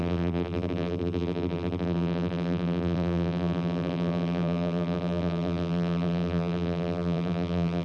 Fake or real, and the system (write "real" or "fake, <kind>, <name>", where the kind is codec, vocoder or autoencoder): fake, vocoder, BigVGAN v2